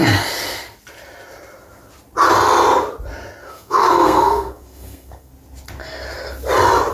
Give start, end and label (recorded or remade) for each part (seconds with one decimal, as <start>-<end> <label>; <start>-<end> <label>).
0.0-3.4 recorded; 3.4-5.3 remade; 5.3-6.9 recorded